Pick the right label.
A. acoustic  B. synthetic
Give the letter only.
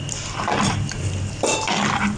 A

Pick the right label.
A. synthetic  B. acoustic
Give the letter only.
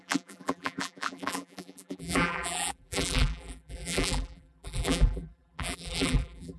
A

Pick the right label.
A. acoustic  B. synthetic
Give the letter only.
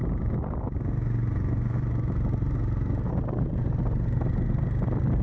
A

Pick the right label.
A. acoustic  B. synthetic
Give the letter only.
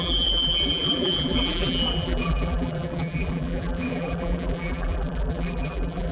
B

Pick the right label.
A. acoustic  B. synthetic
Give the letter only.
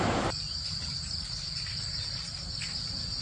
B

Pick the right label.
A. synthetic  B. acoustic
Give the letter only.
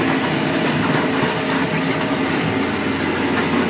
B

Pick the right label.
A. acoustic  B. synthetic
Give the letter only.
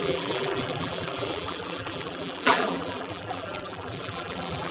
B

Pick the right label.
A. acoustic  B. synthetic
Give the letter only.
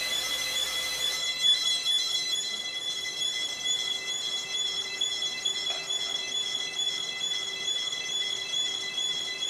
A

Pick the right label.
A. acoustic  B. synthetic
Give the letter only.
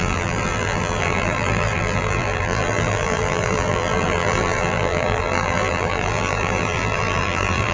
B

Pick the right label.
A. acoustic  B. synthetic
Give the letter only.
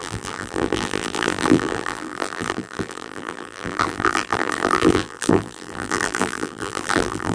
B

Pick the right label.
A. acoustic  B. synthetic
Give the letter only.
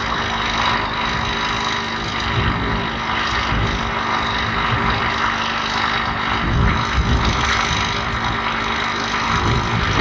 A